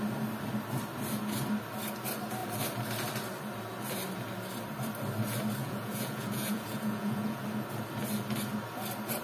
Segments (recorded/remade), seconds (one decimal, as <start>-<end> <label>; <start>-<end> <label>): 0.0-5.6 recorded; 5.6-7.4 remade; 7.4-9.2 recorded